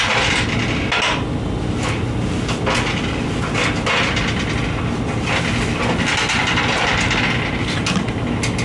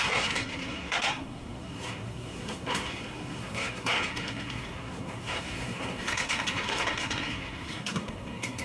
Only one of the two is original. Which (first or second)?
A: first